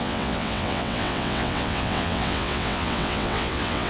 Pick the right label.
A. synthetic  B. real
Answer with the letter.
A